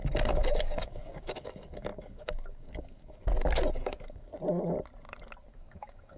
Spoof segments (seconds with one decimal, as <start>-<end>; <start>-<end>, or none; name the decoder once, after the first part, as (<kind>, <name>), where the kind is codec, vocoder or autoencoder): 0.0-3.2 (codec, DAC); 3.7-4.3; 5.5-6.2